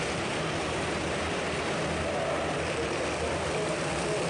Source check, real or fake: real